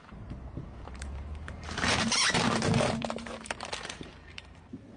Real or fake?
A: fake